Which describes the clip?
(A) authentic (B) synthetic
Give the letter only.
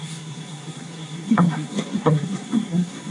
B